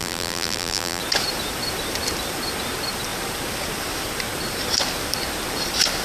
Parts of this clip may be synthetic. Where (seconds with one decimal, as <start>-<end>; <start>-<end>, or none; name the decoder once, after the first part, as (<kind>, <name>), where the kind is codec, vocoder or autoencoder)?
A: 0.0-1.0 (vocoder, BigVGAN v2)